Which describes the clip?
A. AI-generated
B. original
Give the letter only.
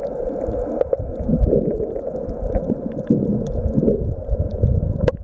B